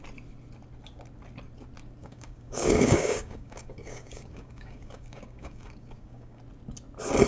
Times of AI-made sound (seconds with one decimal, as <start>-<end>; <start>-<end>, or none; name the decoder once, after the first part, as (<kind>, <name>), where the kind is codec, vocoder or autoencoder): 2.0-6.4 (codec, DAC)

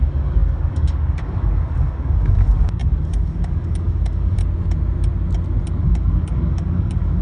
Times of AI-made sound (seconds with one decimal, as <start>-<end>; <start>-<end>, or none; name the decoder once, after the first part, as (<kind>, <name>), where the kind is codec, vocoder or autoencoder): 0.0-4.4 (codec, DAC); 5.8-7.2